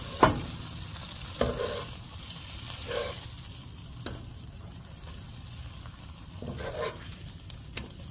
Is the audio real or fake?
real